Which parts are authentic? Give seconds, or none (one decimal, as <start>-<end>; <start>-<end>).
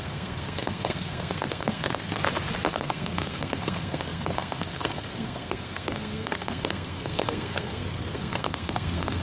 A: 2.2-2.7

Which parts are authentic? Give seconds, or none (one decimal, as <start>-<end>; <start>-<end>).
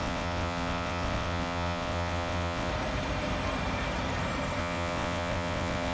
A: 2.7-4.6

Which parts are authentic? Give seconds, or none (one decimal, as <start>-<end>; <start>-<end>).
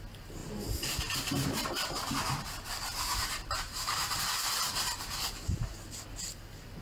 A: 0.0-0.4; 4.2-4.7; 5.7-6.8